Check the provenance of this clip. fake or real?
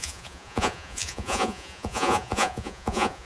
fake